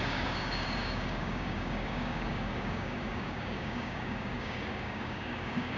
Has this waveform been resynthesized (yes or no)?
yes